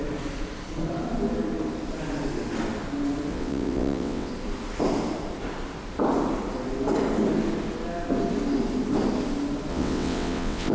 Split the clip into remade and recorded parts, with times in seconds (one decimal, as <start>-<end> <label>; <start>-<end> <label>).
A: 0.0-3.3 recorded; 3.3-4.3 remade; 4.3-9.7 recorded; 9.7-10.7 remade